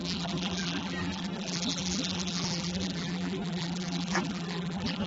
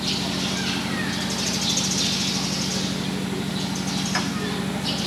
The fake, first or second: first